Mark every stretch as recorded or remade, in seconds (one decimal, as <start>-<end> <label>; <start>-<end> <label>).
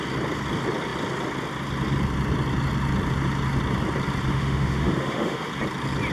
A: 0.0-4.3 recorded; 4.3-5.5 remade; 5.5-6.1 recorded